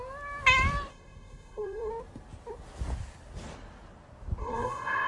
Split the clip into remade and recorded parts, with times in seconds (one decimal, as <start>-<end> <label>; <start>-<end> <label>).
0.0-0.9 recorded; 0.9-1.9 remade; 1.9-4.4 recorded; 4.4-5.1 remade